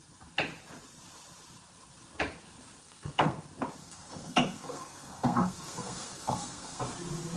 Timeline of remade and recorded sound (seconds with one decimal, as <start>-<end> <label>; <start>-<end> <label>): 0.0-2.8 recorded; 2.8-3.4 remade; 3.4-3.8 recorded; 3.8-6.8 remade; 6.8-7.4 recorded